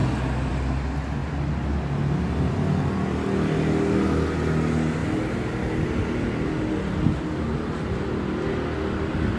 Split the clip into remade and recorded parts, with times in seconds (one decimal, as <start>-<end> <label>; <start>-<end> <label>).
0.0-9.4 recorded